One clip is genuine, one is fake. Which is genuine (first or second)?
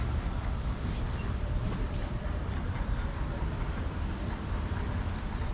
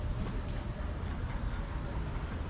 second